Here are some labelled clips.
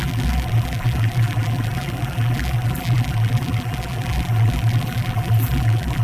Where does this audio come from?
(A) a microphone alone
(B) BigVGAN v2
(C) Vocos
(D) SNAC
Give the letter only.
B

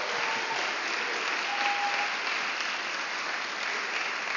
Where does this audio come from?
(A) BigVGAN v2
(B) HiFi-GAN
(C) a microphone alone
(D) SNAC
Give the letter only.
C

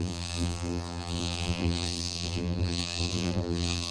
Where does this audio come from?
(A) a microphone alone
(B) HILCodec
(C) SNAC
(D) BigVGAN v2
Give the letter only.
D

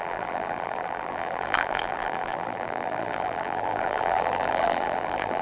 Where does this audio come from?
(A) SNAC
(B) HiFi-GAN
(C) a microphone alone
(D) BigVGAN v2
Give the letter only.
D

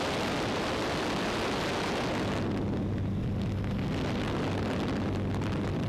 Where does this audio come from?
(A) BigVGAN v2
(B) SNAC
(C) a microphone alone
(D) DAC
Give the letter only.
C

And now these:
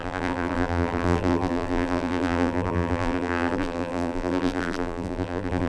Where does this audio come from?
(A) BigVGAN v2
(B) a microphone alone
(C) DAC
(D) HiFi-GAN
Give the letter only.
A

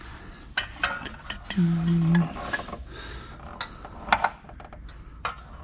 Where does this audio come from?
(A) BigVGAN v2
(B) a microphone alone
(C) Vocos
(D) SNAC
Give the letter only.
B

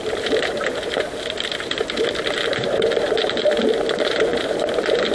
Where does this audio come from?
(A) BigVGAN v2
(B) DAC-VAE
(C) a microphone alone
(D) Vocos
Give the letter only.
A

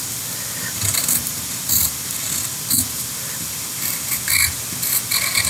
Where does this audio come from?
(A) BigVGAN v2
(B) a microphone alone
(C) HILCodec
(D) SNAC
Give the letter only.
A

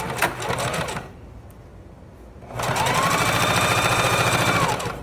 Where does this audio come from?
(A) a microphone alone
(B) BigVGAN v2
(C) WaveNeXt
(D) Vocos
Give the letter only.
A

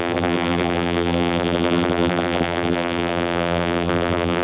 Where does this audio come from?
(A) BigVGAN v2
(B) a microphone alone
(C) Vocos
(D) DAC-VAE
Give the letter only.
A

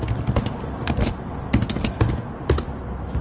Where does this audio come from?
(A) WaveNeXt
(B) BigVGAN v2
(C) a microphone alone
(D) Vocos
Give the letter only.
C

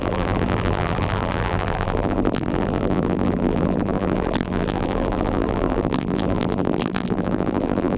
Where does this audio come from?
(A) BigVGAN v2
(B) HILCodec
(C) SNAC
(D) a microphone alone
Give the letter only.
A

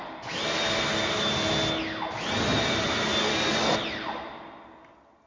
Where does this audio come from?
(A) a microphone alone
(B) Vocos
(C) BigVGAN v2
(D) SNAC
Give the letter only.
A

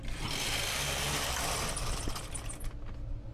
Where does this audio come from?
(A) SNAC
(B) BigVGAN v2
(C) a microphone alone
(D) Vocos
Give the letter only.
C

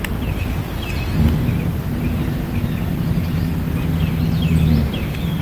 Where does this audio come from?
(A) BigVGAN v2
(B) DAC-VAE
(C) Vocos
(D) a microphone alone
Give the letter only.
D